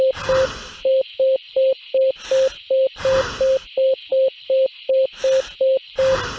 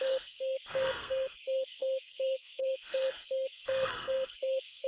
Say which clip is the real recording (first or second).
first